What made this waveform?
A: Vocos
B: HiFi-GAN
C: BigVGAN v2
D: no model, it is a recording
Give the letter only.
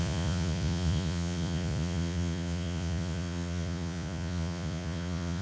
A